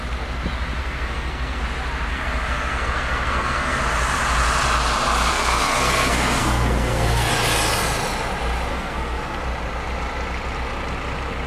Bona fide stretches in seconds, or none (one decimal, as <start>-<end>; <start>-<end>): 0.0-0.8; 1.6-2.1; 3.8-5.3; 7.3-8.7; 9.4-11.5